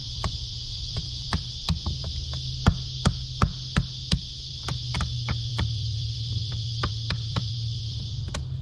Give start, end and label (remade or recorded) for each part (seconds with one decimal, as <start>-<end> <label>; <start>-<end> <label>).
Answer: 0.0-2.3 remade; 2.3-5.5 recorded; 5.5-8.2 remade; 8.2-8.6 recorded